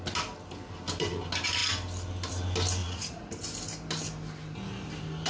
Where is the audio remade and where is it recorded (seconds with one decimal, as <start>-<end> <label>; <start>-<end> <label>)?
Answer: 0.0-2.8 recorded; 2.8-3.3 remade; 3.3-5.3 recorded